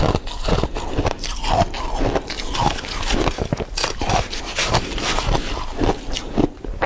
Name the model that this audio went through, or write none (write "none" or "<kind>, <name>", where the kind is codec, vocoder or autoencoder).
none